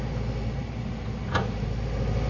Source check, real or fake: real